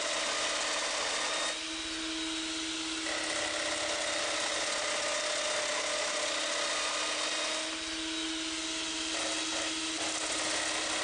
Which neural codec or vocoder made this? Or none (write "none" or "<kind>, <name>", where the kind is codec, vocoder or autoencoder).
none